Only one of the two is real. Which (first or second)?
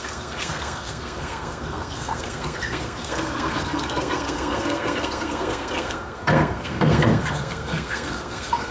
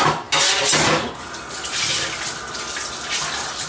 second